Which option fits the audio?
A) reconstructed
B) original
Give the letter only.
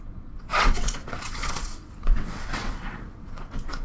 A